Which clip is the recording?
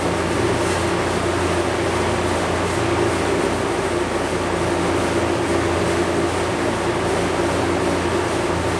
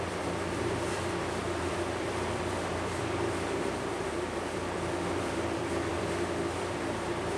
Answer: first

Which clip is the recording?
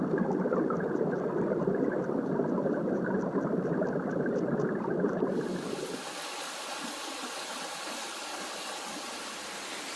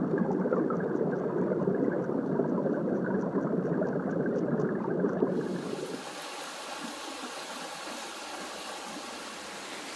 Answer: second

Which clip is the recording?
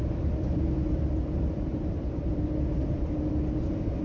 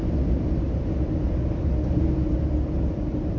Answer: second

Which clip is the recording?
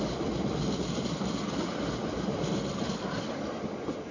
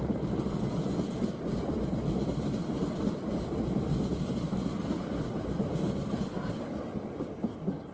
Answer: first